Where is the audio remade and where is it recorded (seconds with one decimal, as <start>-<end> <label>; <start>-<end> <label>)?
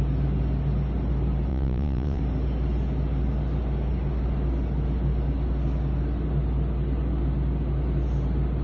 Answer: 0.0-1.5 recorded; 1.5-2.2 remade; 2.2-8.6 recorded